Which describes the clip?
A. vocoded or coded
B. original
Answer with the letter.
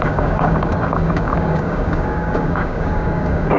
A